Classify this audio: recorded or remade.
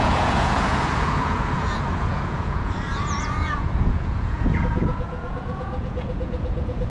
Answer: remade